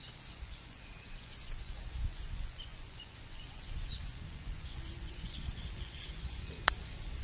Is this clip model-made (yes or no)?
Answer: yes